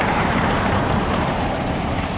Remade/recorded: remade